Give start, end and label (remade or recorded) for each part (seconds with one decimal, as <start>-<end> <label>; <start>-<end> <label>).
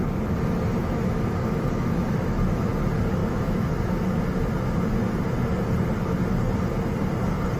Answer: 0.0-0.8 recorded; 0.8-2.7 remade; 2.7-3.2 recorded; 3.2-4.2 remade; 4.2-7.6 recorded